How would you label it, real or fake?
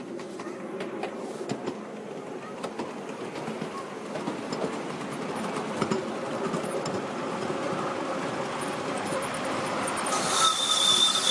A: real